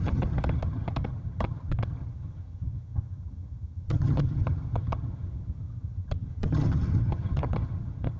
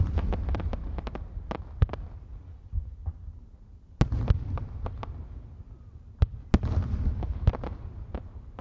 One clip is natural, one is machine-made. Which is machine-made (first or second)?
first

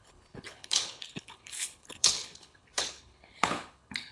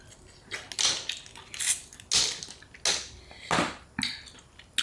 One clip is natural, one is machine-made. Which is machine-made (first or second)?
first